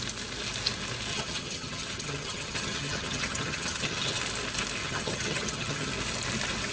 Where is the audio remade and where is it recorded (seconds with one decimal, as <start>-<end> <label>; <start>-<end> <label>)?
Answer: 0.0-1.1 recorded; 1.1-4.2 remade; 4.2-4.8 recorded; 4.8-5.9 remade; 5.9-6.7 recorded